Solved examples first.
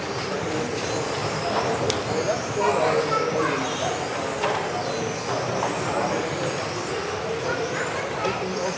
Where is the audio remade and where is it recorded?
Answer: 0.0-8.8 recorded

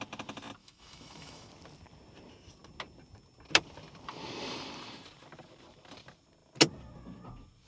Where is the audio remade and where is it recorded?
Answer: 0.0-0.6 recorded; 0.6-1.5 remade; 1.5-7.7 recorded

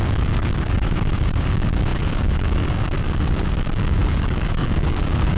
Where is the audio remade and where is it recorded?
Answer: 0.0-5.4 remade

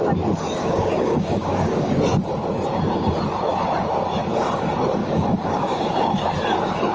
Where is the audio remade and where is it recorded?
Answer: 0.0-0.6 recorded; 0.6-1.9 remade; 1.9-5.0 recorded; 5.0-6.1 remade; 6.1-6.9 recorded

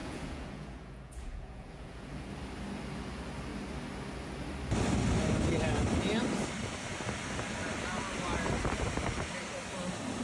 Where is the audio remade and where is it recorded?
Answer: 0.0-2.3 remade; 2.3-10.2 recorded

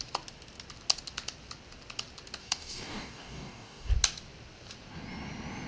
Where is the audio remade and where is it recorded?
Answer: 0.0-2.4 recorded; 2.4-3.9 remade; 3.9-5.7 recorded

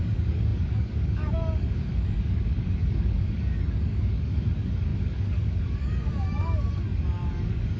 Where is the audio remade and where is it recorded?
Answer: 0.0-7.8 remade

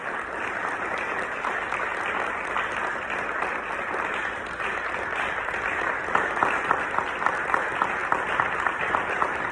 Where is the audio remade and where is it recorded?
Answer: 0.0-9.5 recorded